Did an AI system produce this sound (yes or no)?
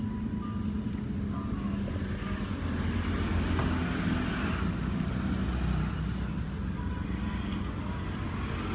no